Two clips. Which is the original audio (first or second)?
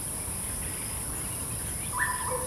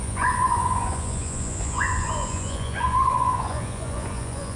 first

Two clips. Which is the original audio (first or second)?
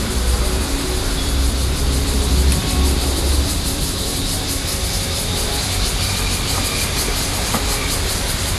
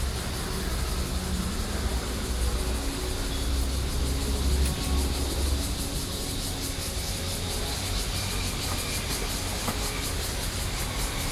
second